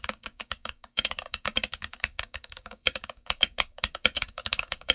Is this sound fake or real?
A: fake